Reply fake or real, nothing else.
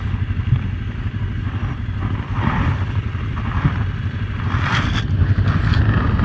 real